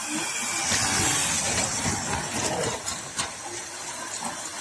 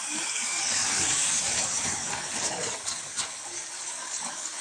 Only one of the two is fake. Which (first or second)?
second